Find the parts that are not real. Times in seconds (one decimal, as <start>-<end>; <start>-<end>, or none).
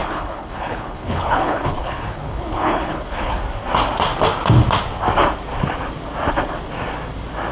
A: 0.0-3.4